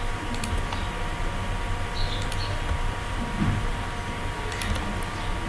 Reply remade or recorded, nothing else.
recorded